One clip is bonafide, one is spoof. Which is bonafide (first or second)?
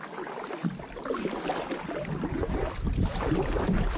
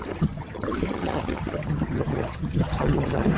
first